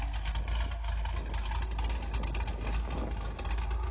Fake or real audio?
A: real